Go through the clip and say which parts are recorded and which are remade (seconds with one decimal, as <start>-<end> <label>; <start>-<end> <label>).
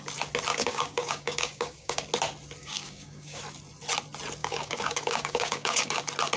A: 0.0-0.5 recorded; 0.5-2.1 remade; 2.1-2.6 recorded; 2.6-3.4 remade; 3.4-4.4 recorded; 4.4-6.0 remade; 6.0-6.4 recorded